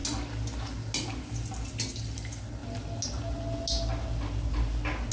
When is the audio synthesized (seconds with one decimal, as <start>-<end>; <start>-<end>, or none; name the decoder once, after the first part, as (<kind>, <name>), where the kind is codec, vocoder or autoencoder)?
none